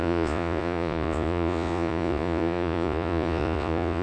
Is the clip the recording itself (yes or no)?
no